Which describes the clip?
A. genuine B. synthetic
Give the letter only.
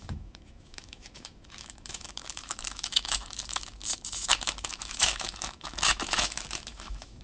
B